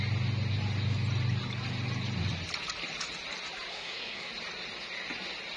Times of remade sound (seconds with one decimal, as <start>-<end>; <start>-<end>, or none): 3.7-4.3